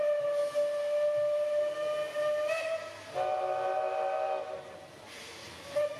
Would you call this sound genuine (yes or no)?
yes